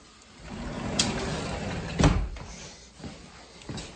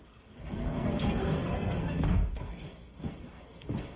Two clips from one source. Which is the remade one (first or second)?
second